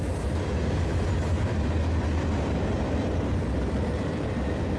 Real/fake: real